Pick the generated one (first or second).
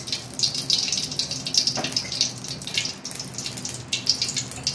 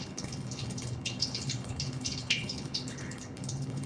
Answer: second